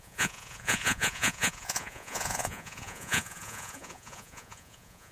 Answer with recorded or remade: remade